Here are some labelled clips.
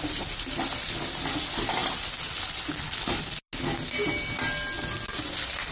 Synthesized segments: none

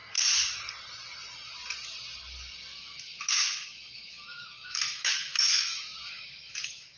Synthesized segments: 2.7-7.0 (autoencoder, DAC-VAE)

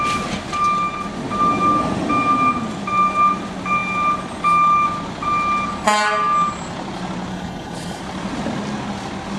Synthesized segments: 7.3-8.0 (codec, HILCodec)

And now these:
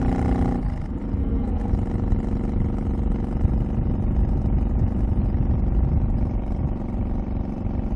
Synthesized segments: 1.2-1.7 (codec, SNAC)

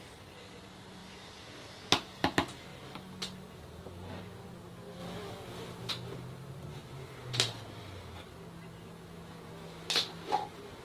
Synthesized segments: 1.0-1.6 (vocoder, BigVGAN v2); 2.7-4.2; 7.2-8.3

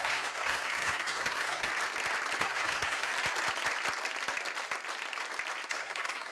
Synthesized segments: 0.0-1.7 (codec, SNAC); 2.4-3.1; 5.7-6.3

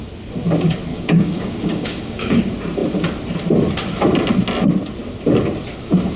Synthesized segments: 0.9-2.4 (codec, DAC)

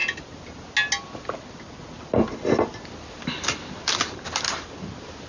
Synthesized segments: none